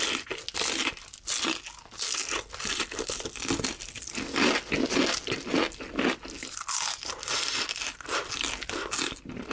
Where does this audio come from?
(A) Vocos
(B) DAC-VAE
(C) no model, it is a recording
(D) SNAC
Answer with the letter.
C